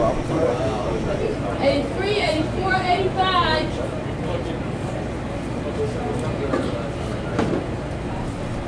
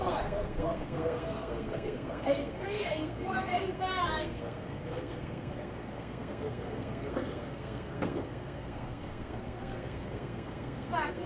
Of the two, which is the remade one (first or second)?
second